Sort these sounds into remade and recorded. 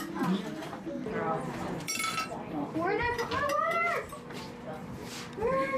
remade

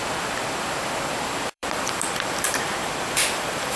remade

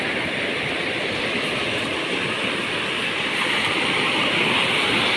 remade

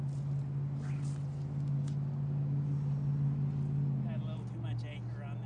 recorded